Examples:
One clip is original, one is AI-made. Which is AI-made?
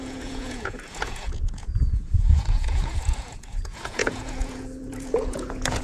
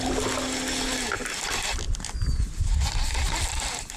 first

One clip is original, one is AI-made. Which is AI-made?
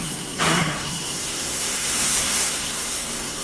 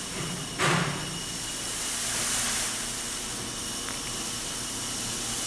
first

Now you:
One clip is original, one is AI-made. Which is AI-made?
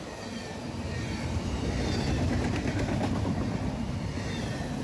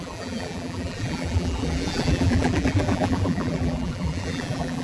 second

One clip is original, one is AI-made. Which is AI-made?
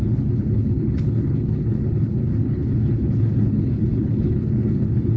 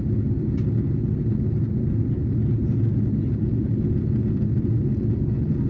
first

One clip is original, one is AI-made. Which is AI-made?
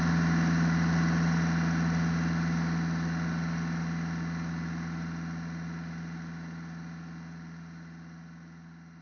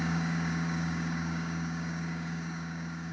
second